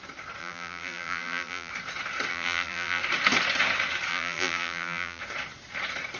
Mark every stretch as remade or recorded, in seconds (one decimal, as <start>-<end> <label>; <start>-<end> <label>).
0.0-0.4 recorded; 0.4-1.7 remade; 1.7-2.3 recorded; 2.3-3.0 remade; 3.0-4.1 recorded; 4.1-5.2 remade; 5.2-6.2 recorded